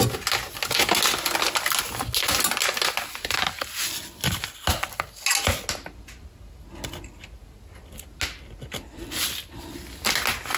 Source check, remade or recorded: recorded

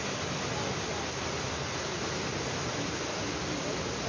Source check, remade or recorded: recorded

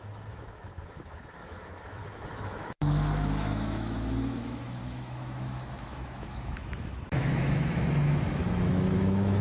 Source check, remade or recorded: remade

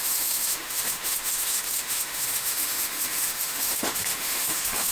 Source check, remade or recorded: remade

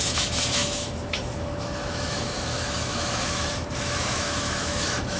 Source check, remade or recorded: remade